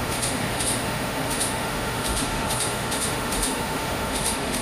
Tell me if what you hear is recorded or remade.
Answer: remade